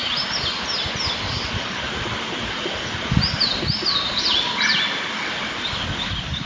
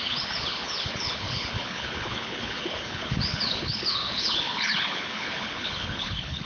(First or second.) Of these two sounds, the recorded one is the first